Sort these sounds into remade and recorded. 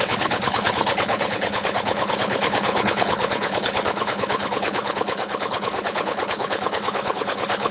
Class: remade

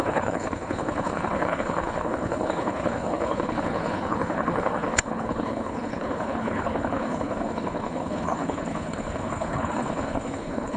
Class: remade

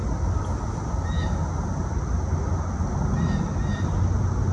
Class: recorded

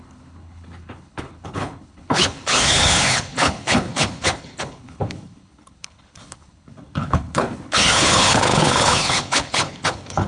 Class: remade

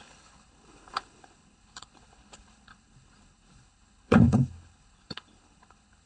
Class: remade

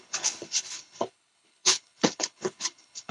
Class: remade